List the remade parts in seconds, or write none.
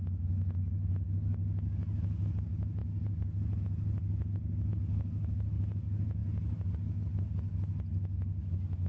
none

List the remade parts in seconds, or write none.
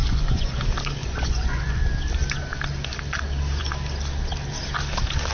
0.0-0.6 (vocoder, Vocos); 1.0-1.8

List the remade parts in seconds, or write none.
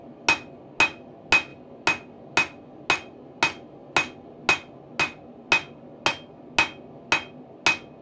none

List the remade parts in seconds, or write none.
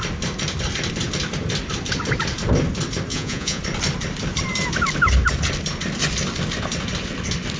3.1-3.6 (vocoder, Vocos)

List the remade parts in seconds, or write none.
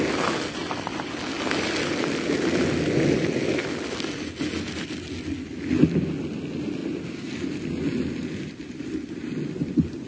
none